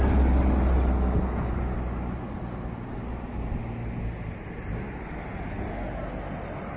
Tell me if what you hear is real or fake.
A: real